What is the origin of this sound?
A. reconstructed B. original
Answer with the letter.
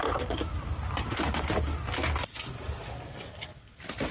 B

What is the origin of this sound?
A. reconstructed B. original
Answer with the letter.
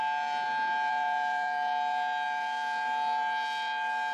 B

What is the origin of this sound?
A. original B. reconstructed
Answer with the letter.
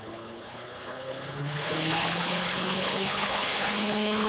B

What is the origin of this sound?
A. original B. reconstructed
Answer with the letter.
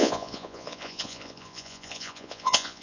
B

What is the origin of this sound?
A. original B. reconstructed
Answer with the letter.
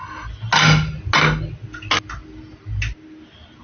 A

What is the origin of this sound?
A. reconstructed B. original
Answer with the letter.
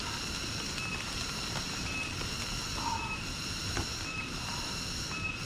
B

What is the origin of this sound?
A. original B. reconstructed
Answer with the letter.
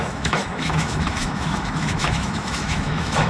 B